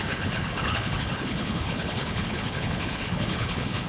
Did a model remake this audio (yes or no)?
yes